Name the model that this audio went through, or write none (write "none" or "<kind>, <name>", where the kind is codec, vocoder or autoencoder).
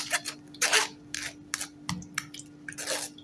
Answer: none